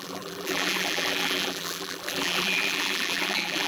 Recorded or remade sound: remade